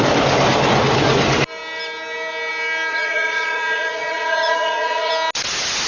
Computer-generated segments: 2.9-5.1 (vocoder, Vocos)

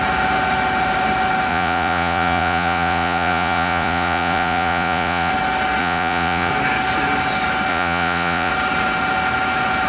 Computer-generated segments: 1.5-5.3 (vocoder, Vocos); 5.8-6.5; 7.7-8.5

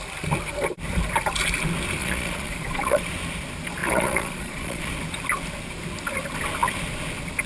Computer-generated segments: 2.0-3.0 (vocoder, Vocos); 3.8-4.9